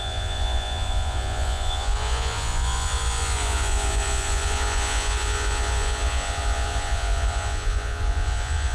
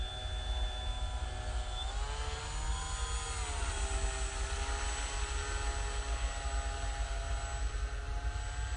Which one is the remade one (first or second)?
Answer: first